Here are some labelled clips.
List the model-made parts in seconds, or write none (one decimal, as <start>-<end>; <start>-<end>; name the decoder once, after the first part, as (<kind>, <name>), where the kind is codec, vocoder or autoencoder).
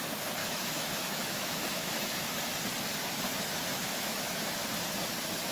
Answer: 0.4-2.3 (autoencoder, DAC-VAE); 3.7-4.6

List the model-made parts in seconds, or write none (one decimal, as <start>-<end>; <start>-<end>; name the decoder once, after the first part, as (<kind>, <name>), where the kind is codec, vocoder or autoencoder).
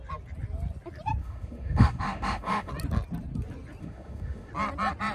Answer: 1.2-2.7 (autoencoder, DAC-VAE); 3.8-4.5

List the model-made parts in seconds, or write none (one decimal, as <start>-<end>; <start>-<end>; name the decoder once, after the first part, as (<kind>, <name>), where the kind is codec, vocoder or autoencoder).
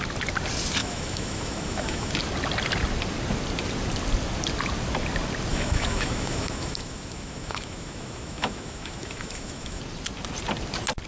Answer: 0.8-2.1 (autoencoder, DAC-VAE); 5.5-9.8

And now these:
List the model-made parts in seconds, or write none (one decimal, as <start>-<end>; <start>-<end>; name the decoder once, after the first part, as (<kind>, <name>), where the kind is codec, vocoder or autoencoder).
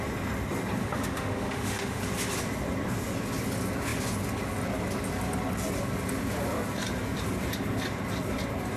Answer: 0.8-2.0 (autoencoder, DAC-VAE)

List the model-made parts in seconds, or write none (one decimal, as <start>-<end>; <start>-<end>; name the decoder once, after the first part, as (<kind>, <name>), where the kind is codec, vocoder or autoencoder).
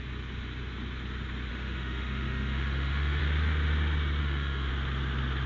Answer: 1.5-3.2 (autoencoder, DAC-VAE); 4.2-4.7